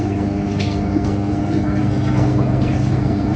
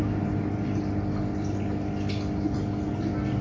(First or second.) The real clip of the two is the second